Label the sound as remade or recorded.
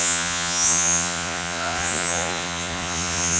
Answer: remade